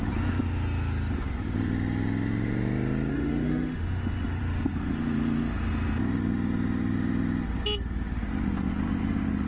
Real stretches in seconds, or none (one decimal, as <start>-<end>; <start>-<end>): 0.0-3.1; 4.4-9.5